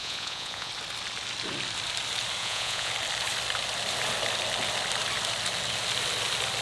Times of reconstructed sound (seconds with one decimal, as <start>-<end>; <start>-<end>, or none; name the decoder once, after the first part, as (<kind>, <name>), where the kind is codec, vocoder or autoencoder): 0.0-0.7 (vocoder, Vocos); 2.4-2.9